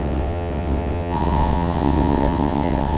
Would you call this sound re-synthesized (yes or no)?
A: yes